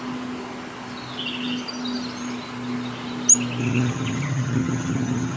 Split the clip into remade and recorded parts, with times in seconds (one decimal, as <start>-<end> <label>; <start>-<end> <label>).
0.0-3.6 recorded; 3.6-5.4 remade